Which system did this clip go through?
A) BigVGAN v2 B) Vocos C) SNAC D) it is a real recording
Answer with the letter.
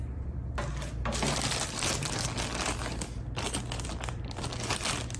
D